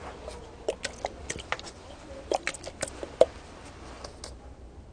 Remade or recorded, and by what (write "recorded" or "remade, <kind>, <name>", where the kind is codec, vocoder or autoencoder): recorded